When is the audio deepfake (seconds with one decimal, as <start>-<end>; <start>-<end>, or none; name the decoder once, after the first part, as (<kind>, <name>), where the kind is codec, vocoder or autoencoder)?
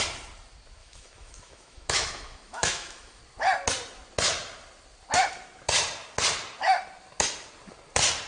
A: 0.8-3.2 (autoencoder, DAC-VAE)